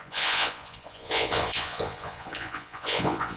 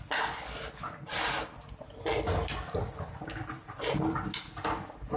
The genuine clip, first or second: second